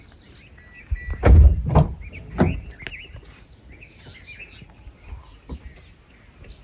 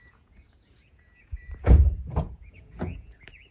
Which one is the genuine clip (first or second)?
first